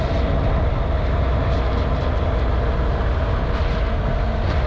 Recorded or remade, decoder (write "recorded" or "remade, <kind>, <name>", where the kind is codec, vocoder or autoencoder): recorded